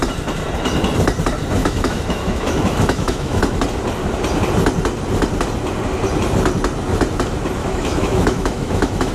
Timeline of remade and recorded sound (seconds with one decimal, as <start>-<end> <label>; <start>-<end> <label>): 0.0-1.6 recorded; 1.6-3.4 remade; 3.4-7.6 recorded; 7.6-9.1 remade